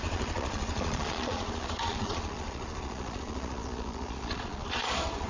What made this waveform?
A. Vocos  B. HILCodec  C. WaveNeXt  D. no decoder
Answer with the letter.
A